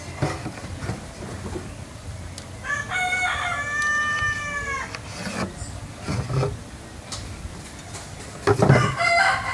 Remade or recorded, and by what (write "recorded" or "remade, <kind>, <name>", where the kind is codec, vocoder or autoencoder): recorded